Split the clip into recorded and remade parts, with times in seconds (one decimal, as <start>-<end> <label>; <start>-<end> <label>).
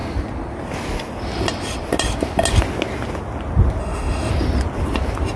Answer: 0.0-3.8 recorded; 3.8-4.3 remade; 4.3-5.4 recorded